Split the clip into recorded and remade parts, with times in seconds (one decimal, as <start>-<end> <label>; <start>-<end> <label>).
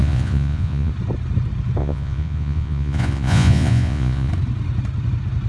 0.0-0.9 remade; 0.9-1.8 recorded; 1.8-4.3 remade; 4.3-5.5 recorded